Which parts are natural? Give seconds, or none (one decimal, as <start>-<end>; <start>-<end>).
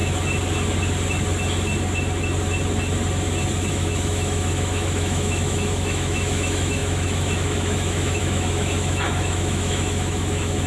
0.0-3.7